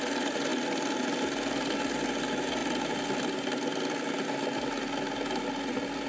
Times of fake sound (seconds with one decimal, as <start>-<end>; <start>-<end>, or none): 0.5-1.0